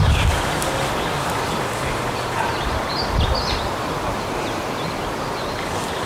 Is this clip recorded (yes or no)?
yes